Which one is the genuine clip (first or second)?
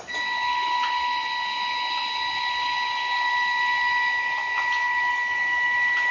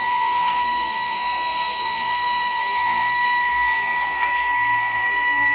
first